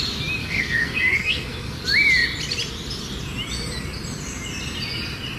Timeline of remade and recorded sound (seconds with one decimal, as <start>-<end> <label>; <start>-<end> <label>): 0.0-0.4 recorded; 0.4-1.8 remade; 1.8-5.4 recorded

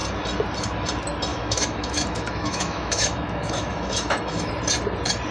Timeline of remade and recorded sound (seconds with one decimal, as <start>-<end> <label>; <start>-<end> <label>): 0.0-1.3 recorded; 1.3-4.5 remade; 4.5-5.3 recorded

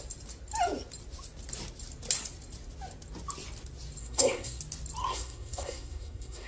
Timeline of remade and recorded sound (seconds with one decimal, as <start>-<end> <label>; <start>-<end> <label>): 0.0-4.0 recorded; 4.0-4.6 remade; 4.6-5.0 recorded; 5.0-6.5 remade

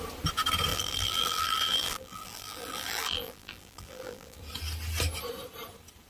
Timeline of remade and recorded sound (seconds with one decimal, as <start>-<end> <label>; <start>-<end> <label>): 0.0-0.7 recorded; 0.7-4.4 remade; 4.4-6.1 recorded